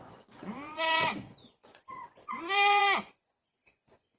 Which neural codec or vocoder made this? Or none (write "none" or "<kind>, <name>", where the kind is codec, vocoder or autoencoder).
vocoder, Vocos